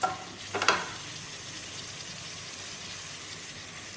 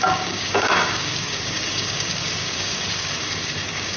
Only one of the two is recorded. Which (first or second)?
first